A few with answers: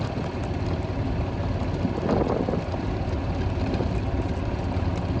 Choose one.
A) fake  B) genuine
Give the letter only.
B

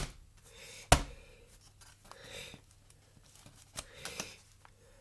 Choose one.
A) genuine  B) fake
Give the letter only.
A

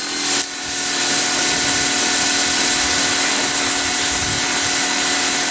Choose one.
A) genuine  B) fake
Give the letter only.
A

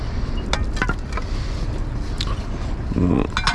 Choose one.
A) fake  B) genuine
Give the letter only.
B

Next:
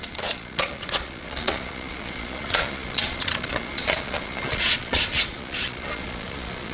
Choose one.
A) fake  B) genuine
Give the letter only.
A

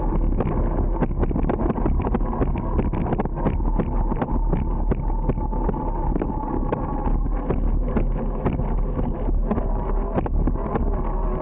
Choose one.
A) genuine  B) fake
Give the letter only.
A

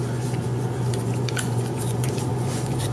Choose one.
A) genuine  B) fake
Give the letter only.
B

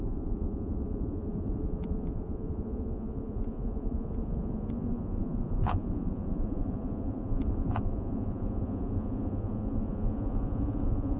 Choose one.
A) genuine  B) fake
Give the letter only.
B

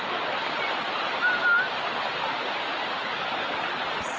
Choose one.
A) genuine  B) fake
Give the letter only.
A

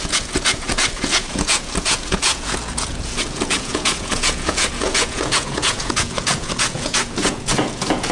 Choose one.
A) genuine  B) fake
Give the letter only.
B